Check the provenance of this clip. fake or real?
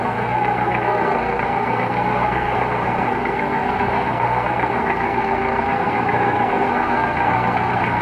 fake